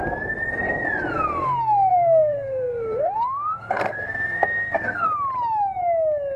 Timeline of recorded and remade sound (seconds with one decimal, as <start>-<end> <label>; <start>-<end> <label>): 0.0-1.9 recorded; 1.9-5.1 remade; 5.1-6.4 recorded